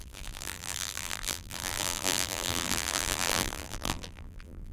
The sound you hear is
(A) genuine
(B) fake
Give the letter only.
B